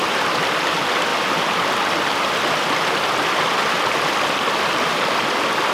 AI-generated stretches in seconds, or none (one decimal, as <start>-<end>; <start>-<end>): none